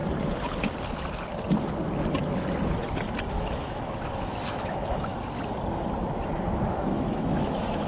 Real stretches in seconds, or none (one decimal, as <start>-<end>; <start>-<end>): 0.0-3.3; 5.1-6.7